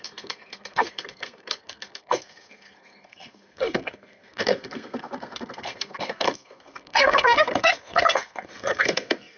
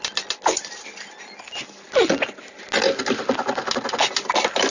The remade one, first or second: first